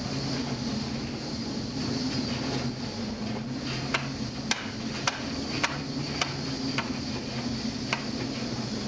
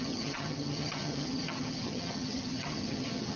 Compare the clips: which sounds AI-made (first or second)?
second